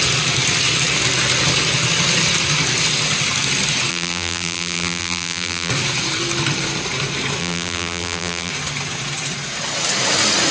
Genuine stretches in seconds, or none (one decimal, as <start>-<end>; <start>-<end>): 0.0-3.9; 5.7-7.4; 8.5-10.5